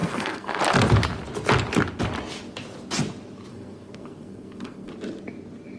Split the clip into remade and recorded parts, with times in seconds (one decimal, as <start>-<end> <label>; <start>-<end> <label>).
0.0-0.6 remade; 0.6-3.5 recorded; 3.5-4.9 remade; 4.9-5.8 recorded